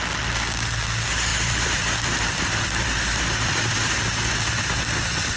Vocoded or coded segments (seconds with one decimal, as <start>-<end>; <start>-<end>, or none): 1.3-3.9